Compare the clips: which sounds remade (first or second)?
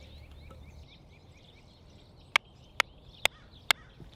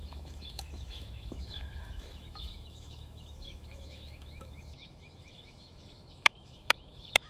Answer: second